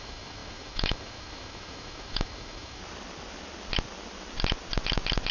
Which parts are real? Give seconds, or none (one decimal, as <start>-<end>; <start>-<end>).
2.8-5.3